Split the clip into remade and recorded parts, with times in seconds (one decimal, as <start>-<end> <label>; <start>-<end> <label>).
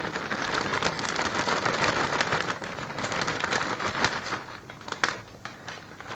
0.0-2.3 remade; 2.3-5.6 recorded; 5.6-6.1 remade